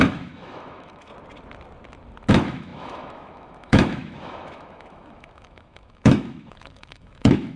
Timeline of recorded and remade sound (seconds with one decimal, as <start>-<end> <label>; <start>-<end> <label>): 0.0-1.1 remade; 1.1-2.3 recorded; 2.3-7.6 remade